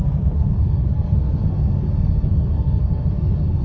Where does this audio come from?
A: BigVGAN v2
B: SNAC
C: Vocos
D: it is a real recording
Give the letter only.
B